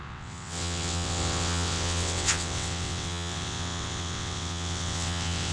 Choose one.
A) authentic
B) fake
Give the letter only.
B